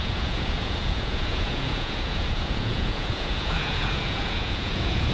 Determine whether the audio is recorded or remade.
remade